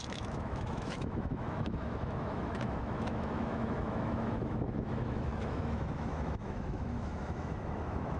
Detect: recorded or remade remade